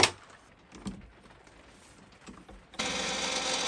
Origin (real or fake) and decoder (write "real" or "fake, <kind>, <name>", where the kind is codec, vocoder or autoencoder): real